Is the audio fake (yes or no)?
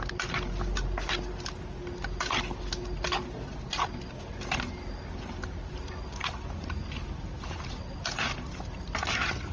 no